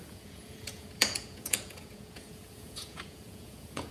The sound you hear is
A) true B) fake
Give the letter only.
B